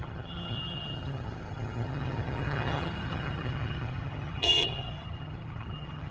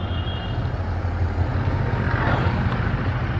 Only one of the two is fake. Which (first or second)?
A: first